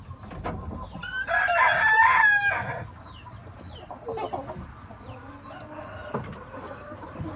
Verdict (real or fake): real